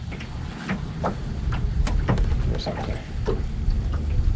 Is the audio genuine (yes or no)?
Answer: yes